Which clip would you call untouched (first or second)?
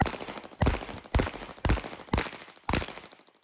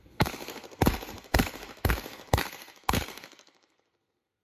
first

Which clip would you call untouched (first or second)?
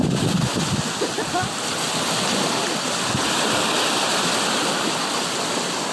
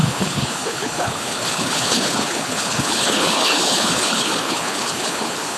first